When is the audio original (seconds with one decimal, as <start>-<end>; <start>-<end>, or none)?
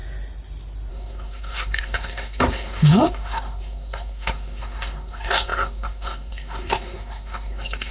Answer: 0.0-0.9